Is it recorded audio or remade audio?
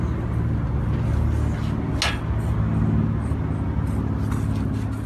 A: recorded